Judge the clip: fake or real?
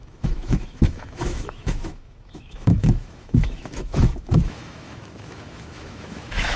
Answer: fake